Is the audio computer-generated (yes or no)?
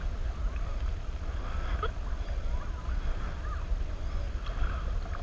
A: no